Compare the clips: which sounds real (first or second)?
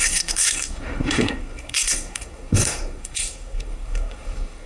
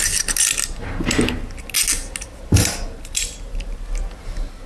second